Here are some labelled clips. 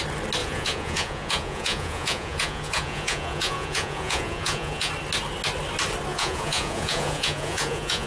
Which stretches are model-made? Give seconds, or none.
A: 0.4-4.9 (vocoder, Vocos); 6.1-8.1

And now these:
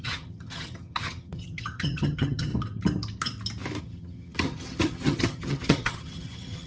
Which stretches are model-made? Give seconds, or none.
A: 0.0-2.5 (vocoder, HiFi-GAN); 3.8-6.7

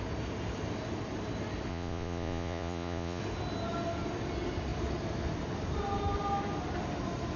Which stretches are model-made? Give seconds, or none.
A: 1.7-3.2 (vocoder, Vocos)